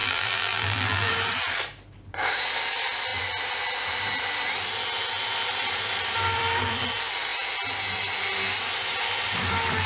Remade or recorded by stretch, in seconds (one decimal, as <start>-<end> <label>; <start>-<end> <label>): 0.0-1.1 remade; 1.1-9.9 recorded